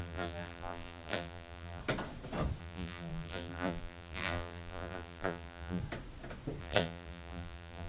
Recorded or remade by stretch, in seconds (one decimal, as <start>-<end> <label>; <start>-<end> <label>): 0.0-1.8 remade; 1.8-2.6 recorded; 2.6-5.8 remade; 5.8-6.6 recorded; 6.6-7.9 remade